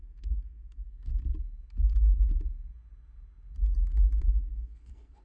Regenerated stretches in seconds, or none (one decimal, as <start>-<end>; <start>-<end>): 0.0-1.1; 4.2-5.2